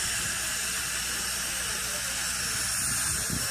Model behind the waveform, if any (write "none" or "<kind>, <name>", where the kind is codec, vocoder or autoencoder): none